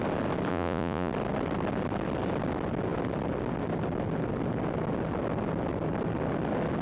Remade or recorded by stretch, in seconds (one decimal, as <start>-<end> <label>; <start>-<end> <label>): 0.0-0.5 recorded; 0.5-1.1 remade; 1.1-6.8 recorded

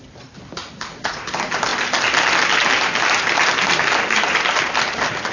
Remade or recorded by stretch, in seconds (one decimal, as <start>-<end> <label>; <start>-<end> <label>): 0.0-0.6 recorded; 0.6-1.2 remade; 1.2-5.3 recorded

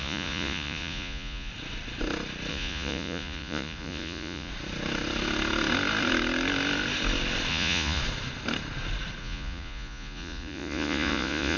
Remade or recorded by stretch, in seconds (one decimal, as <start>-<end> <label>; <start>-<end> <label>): 0.0-1.5 remade; 1.5-2.5 recorded; 2.5-4.5 remade; 4.5-7.5 recorded; 7.5-8.0 remade; 8.0-9.2 recorded; 9.2-11.6 remade

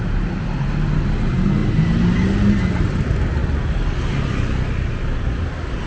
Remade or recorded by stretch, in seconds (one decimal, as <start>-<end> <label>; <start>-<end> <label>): 0.0-5.9 recorded